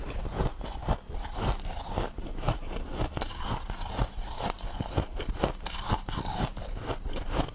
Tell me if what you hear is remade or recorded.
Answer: recorded